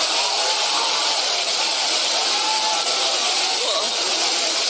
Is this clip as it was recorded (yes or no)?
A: yes